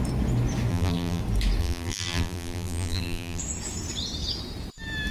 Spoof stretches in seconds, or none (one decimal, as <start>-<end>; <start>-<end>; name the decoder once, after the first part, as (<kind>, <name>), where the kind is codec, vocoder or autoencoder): 0.7-1.2 (vocoder, BigVGAN v2); 1.6-3.4